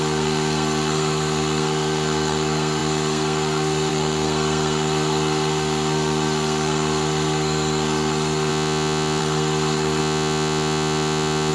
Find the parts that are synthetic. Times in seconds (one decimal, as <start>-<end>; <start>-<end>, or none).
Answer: 0.0-8.5; 9.2-10.0